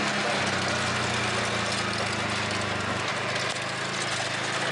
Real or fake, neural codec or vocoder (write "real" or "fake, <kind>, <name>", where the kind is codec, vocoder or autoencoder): real